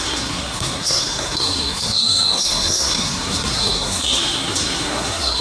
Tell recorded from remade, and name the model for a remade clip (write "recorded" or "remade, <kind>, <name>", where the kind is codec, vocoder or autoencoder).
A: remade, codec, SNAC